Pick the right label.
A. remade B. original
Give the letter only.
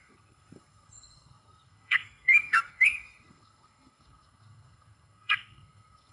A